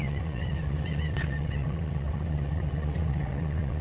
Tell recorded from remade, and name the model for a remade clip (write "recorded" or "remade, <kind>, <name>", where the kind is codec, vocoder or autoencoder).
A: remade, vocoder, WaveNeXt